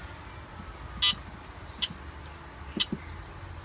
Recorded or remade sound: recorded